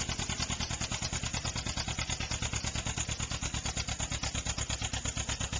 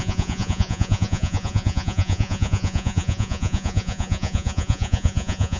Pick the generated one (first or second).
second